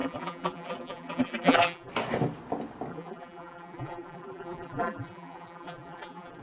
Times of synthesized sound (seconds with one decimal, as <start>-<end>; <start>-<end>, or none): 0.0-1.9; 2.9-6.4